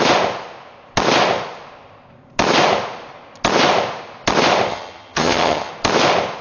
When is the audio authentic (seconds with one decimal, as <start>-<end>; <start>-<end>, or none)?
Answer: 0.0-4.7; 5.7-6.4